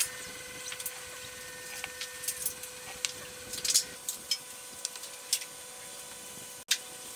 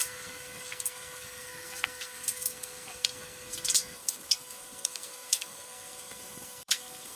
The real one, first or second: first